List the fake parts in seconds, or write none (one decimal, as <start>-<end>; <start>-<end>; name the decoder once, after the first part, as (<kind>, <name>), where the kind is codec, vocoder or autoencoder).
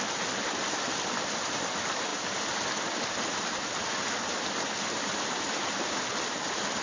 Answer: none